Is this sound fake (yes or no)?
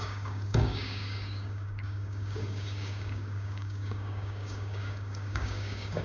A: yes